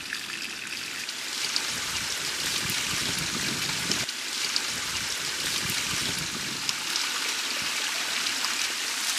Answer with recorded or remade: recorded